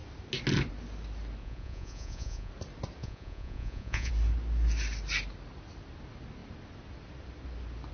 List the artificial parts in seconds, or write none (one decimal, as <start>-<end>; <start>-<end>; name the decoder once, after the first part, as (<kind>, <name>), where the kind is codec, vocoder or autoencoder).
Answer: 1.4-2.5 (vocoder, Vocos); 3.0-4.1